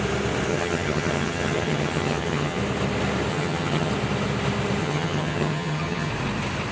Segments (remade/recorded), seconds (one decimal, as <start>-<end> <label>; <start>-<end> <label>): 0.0-0.5 recorded; 0.5-2.6 remade; 2.6-3.3 recorded; 3.3-3.9 remade; 3.9-4.8 recorded; 4.8-6.1 remade; 6.1-6.7 recorded